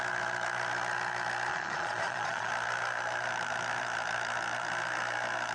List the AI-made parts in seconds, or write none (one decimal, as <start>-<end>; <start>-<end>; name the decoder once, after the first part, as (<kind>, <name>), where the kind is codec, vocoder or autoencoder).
1.5-2.5 (vocoder, Vocos)